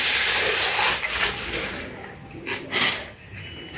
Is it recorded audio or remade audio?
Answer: recorded